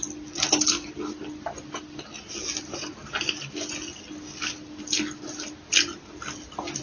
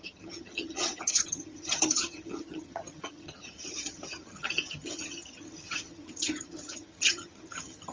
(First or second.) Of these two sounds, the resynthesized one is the second